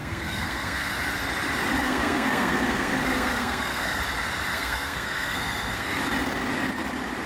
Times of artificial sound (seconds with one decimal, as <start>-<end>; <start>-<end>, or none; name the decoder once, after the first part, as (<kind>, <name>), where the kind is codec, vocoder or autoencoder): 0.0-0.9 (codec, SNAC); 1.8-4.0; 4.5-6.0